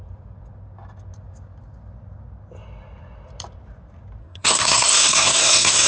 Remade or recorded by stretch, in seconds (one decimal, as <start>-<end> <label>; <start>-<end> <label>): 0.0-4.2 recorded; 4.2-5.9 remade

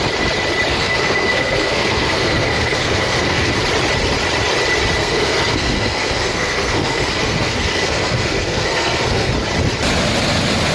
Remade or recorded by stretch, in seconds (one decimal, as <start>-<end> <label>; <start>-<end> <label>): 0.0-0.7 recorded; 0.7-3.5 remade; 3.5-5.0 recorded; 5.0-9.3 remade; 9.3-10.7 recorded

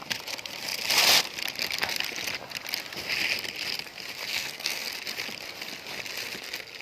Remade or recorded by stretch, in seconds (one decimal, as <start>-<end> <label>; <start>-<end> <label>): 0.0-4.3 recorded; 4.3-4.9 remade; 4.9-6.8 recorded

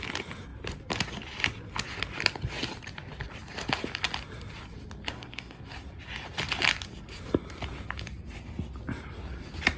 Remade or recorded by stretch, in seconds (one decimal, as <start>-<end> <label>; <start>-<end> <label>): 0.0-5.1 recorded; 5.1-5.6 remade; 5.6-9.8 recorded

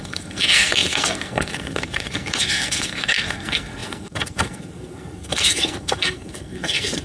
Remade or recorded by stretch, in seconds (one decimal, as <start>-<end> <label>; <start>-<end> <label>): 0.0-7.0 remade

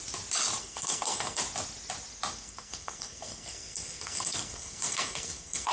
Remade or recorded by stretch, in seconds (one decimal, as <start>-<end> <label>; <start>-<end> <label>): 0.0-0.6 recorded; 0.6-1.4 remade; 1.4-2.3 recorded; 2.3-5.7 remade

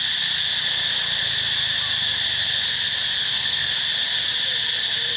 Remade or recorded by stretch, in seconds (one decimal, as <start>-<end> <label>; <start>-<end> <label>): 0.0-3.2 recorded; 3.2-3.7 remade; 3.7-5.2 recorded